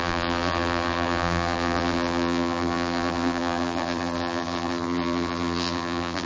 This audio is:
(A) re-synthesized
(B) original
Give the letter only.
A